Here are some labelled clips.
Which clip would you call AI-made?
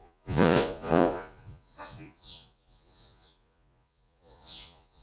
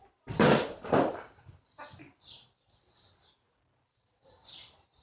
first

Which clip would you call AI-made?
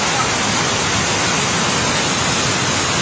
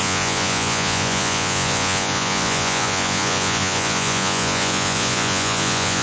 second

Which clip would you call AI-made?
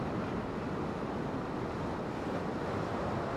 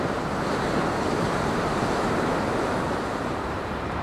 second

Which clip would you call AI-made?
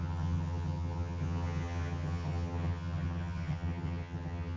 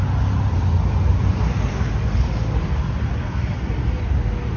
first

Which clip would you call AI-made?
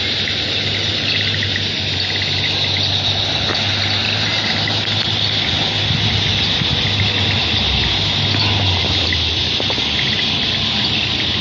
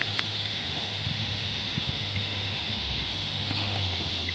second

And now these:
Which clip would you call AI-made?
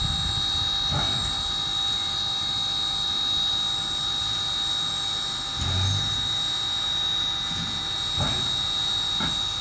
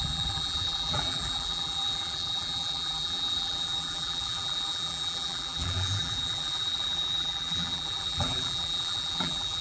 second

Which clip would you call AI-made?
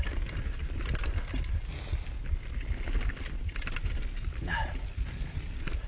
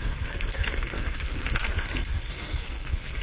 second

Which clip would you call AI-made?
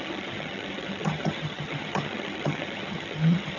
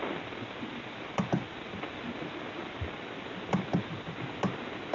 first